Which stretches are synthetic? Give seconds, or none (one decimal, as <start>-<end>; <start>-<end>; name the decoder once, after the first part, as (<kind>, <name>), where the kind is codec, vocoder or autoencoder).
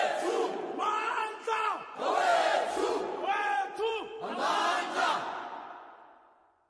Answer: 0.0-6.7 (vocoder, Vocos)